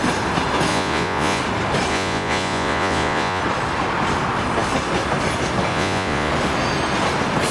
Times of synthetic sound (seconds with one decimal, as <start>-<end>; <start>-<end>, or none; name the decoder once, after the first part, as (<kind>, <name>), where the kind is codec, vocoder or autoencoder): 0.7-1.4 (vocoder, Vocos); 1.9-3.4; 5.7-6.3

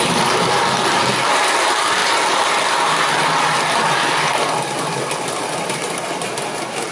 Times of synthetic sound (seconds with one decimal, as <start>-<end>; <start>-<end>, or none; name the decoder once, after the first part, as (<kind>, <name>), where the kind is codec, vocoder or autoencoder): none